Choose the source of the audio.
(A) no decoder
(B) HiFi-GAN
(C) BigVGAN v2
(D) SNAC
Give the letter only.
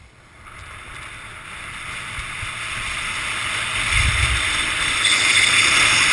A